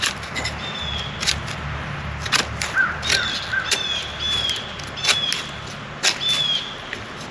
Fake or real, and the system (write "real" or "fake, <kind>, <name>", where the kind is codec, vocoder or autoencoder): real